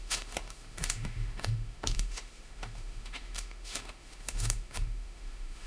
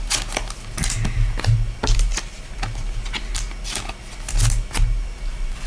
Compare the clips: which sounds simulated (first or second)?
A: first